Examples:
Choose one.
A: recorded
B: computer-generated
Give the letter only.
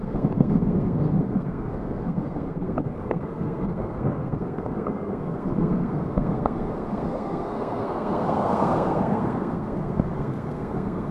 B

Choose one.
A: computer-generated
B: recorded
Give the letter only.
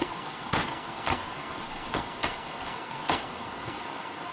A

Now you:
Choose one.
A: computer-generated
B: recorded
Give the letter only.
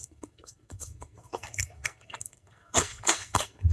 A